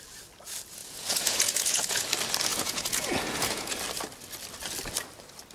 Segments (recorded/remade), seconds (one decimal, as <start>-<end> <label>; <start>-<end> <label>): 0.0-0.8 recorded; 0.8-2.1 remade; 2.1-2.5 recorded; 2.5-3.8 remade; 3.8-5.5 recorded